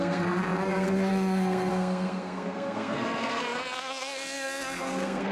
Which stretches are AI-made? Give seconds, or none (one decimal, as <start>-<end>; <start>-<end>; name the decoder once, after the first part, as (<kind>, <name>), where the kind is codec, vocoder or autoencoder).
0.0-5.3 (codec, SNAC)